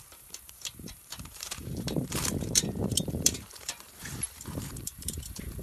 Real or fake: fake